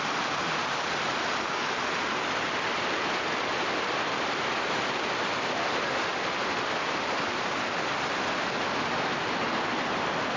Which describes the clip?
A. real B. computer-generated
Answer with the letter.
A